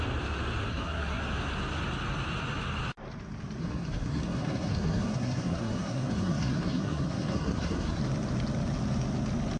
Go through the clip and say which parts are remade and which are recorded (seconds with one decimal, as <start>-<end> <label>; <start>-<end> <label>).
0.0-0.7 recorded; 0.7-1.2 remade; 1.2-3.6 recorded; 3.6-8.0 remade; 8.0-9.6 recorded